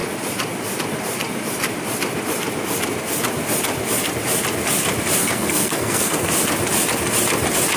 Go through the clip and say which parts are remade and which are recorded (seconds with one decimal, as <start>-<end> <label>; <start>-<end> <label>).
0.0-5.2 recorded; 5.2-6.3 remade; 6.3-7.8 recorded